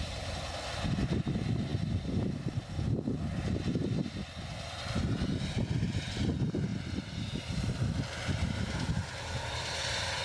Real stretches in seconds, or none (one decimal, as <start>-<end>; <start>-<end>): 0.0-6.7